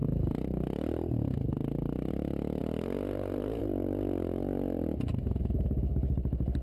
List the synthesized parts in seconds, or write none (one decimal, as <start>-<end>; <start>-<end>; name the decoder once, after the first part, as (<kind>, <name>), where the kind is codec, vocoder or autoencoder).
none